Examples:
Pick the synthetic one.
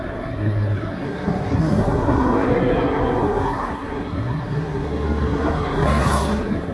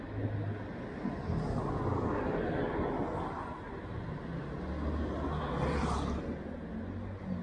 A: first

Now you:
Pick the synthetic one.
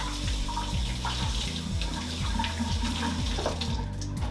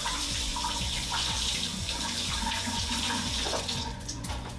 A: second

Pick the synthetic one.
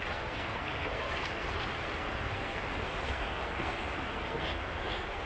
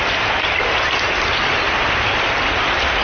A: first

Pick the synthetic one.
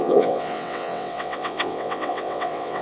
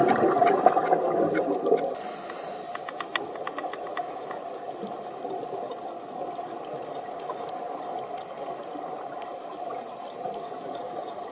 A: first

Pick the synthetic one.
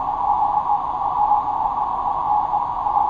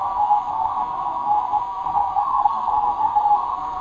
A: second